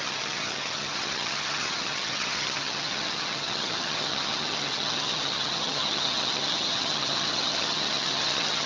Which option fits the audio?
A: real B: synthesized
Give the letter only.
B